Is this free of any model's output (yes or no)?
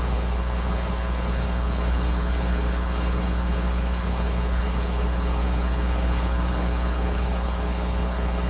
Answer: no